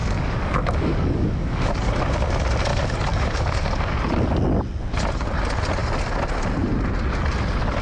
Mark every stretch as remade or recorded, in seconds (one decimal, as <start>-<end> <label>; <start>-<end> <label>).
0.0-1.9 remade; 1.9-2.7 recorded; 2.7-4.0 remade; 4.0-7.8 recorded